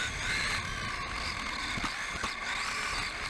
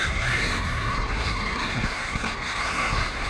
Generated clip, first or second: second